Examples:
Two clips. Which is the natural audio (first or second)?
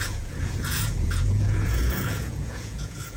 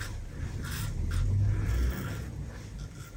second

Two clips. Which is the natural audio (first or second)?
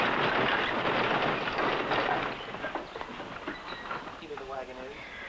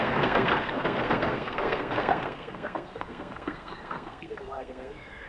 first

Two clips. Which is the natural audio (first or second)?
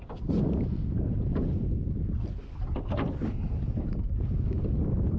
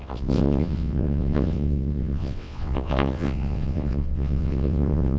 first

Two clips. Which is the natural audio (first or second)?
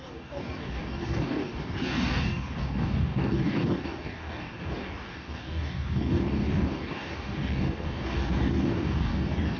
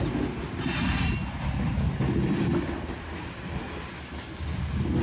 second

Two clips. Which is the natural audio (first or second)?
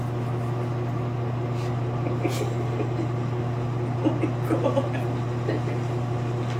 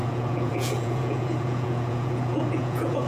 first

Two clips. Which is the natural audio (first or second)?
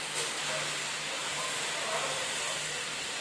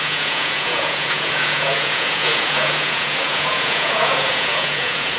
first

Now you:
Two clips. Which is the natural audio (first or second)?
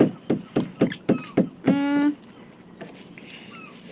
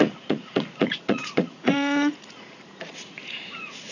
first